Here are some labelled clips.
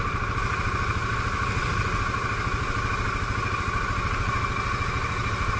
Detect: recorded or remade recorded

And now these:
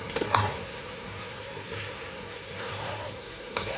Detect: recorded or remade remade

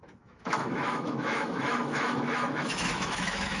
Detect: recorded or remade remade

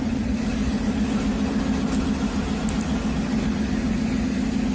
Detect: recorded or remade recorded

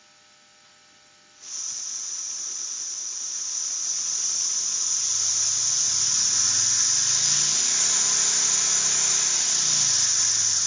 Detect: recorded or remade recorded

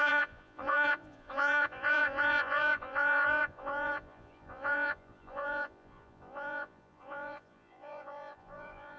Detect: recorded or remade remade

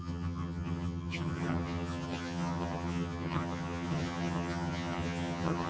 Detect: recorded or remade remade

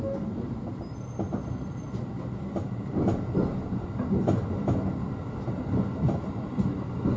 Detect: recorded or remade recorded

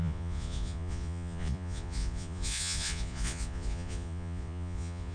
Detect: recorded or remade remade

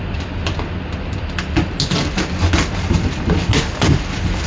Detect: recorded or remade recorded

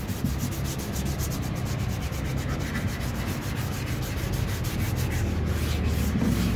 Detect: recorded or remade recorded